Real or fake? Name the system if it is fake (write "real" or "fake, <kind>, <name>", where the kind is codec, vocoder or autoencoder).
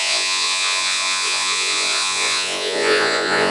fake, vocoder, Vocos